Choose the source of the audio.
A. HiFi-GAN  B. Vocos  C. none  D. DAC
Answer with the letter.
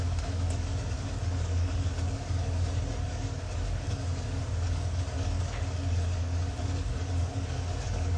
D